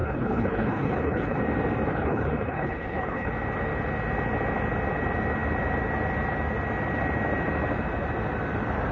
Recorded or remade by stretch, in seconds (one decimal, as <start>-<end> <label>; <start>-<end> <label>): 0.0-1.4 remade; 1.4-1.9 recorded; 1.9-3.3 remade; 3.3-8.9 recorded